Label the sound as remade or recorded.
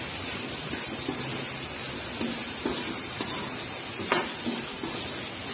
recorded